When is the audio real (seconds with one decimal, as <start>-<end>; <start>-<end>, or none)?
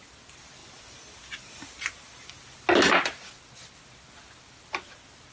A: 0.0-5.3